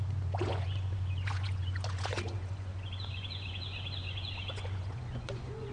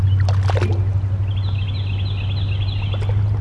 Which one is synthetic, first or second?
first